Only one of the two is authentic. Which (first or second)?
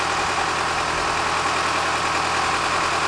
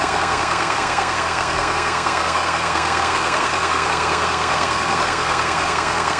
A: first